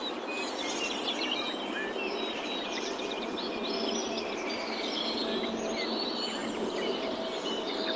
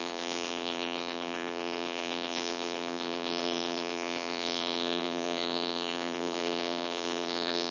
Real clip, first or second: first